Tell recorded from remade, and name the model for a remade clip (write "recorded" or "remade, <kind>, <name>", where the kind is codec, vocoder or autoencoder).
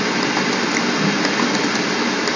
recorded